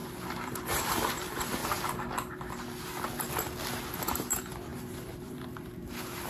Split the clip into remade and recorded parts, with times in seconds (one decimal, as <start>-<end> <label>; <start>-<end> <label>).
0.0-1.6 remade; 1.6-4.1 recorded; 4.1-6.3 remade